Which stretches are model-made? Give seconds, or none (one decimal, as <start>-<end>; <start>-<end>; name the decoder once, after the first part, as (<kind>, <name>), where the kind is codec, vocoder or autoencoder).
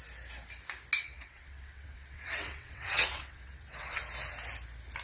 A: 1.0-4.0 (vocoder, WaveNeXt)